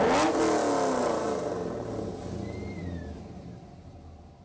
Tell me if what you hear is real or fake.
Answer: real